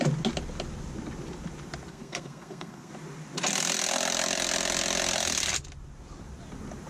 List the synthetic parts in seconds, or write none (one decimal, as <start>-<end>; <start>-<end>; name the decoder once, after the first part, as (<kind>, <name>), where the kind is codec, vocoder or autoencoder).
1.9-2.9 (codec, SNAC)